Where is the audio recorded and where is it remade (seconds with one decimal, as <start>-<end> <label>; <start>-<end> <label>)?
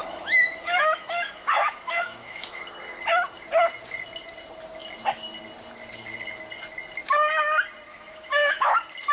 0.0-2.6 remade; 2.6-7.9 recorded; 7.9-8.7 remade; 8.7-9.1 recorded